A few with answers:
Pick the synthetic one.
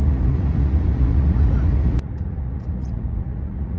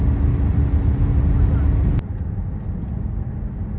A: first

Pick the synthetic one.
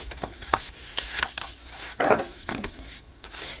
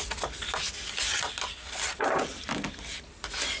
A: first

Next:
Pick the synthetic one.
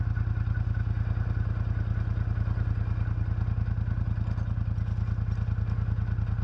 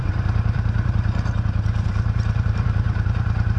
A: second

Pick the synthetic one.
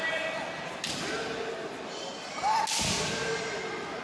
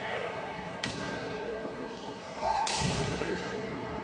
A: second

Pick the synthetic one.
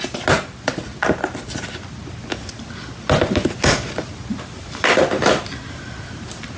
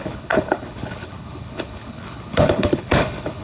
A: second